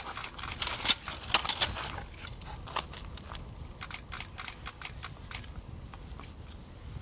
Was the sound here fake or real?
real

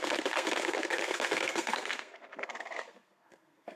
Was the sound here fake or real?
fake